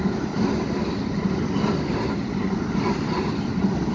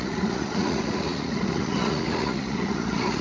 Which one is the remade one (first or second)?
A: second